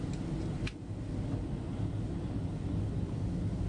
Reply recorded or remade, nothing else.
recorded